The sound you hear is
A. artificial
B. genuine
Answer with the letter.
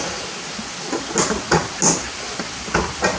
B